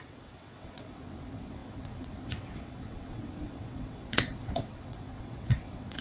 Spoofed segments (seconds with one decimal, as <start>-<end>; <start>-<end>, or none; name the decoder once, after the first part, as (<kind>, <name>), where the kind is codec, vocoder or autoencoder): 0.0-6.0 (vocoder, WaveNeXt)